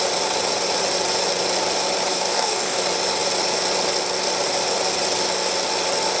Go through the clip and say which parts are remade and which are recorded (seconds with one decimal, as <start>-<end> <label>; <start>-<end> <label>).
0.0-2.1 recorded; 2.1-2.8 remade; 2.8-6.2 recorded